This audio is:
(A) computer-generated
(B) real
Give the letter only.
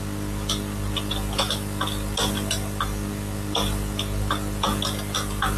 B